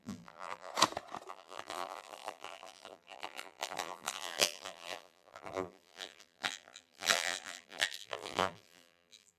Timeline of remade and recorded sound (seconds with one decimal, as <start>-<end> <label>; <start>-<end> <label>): 0.0-0.7 remade; 0.7-1.3 recorded; 1.3-9.4 remade